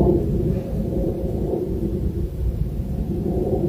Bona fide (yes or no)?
no